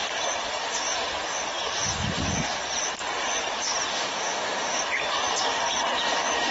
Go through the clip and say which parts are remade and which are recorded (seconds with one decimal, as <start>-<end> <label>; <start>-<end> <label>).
0.0-3.9 recorded; 3.9-4.8 remade; 4.8-6.5 recorded